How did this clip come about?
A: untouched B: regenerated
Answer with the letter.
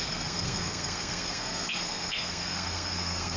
B